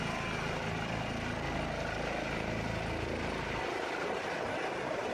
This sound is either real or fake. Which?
real